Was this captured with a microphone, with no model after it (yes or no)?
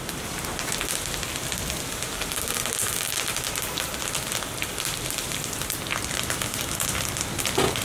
yes